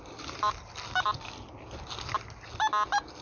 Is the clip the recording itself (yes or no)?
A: yes